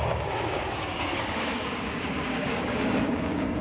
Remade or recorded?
remade